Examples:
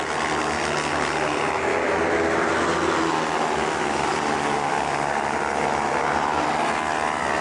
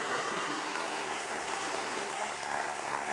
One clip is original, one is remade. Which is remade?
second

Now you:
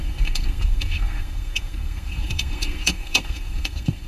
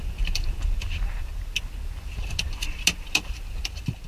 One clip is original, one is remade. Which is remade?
first